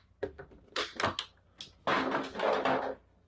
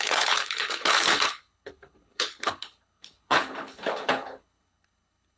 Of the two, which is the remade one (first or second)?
second